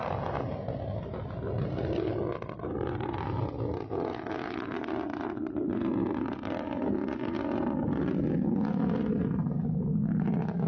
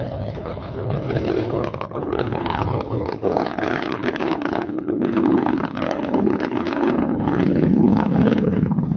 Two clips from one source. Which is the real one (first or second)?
first